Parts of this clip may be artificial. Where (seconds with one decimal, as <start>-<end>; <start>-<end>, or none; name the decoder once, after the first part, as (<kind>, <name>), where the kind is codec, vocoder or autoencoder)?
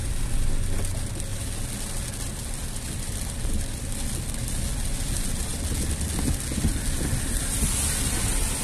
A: none